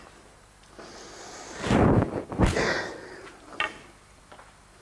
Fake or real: real